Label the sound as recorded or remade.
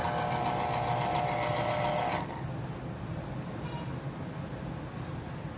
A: recorded